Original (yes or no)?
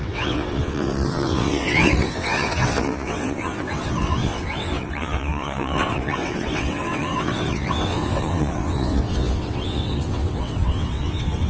no